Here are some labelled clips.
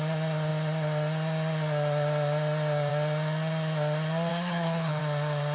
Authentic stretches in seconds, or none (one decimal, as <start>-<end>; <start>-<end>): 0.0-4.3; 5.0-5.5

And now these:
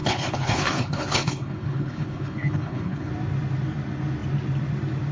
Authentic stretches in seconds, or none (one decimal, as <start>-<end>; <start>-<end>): 3.1-5.1

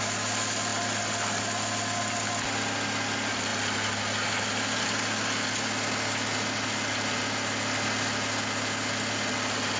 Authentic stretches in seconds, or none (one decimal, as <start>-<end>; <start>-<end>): 0.0-9.8

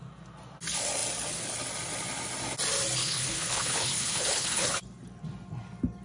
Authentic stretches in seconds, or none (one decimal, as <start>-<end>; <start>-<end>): 0.0-3.0; 4.7-6.0